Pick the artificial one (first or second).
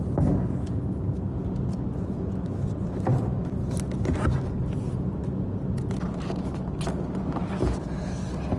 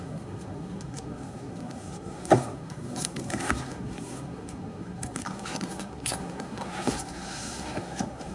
second